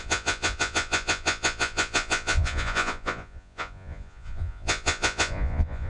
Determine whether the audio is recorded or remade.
remade